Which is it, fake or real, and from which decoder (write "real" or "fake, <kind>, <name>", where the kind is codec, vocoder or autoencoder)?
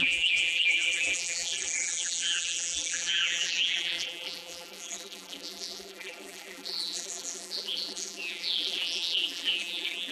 fake, vocoder, BigVGAN v2